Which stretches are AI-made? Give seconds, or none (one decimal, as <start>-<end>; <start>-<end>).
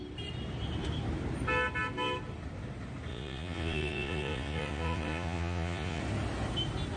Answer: 3.1-6.0